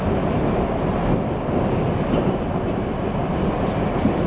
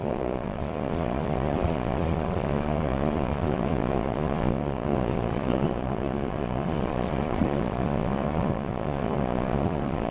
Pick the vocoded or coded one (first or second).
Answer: second